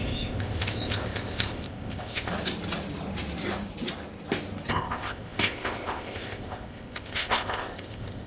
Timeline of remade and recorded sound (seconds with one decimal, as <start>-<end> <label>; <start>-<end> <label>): 0.0-2.3 remade; 2.3-4.7 recorded; 4.7-8.3 remade